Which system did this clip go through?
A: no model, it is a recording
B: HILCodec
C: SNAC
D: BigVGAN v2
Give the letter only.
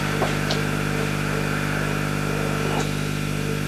A